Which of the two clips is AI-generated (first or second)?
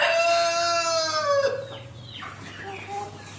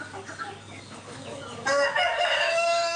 second